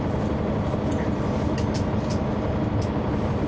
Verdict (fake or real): real